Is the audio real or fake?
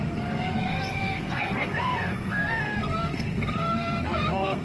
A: fake